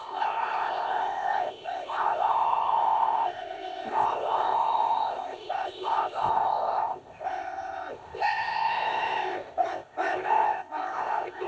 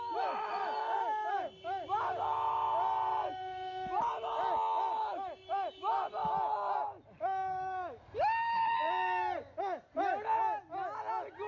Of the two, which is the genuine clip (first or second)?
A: second